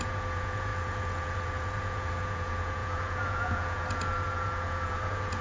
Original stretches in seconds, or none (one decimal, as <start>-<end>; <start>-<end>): none